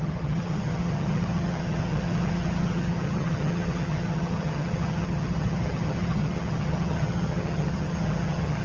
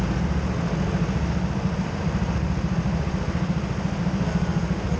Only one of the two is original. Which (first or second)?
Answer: second